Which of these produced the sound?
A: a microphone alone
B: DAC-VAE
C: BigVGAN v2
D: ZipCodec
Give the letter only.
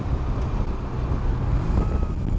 A